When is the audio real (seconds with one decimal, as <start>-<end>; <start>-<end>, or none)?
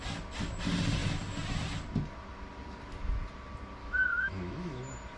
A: 0.0-3.8; 4.8-5.2